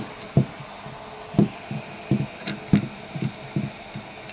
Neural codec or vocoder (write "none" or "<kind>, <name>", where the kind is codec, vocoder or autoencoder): none